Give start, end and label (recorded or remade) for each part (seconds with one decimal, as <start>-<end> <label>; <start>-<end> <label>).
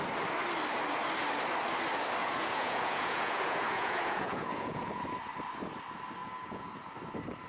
0.0-2.2 recorded; 2.2-5.0 remade; 5.0-6.2 recorded; 6.2-6.7 remade; 6.7-7.5 recorded